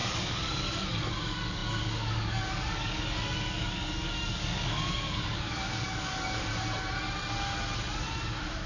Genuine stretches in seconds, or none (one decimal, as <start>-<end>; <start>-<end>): 6.5-8.7